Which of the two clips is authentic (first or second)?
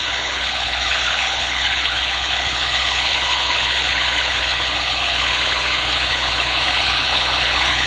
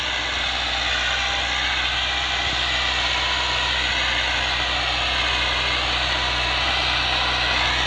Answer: second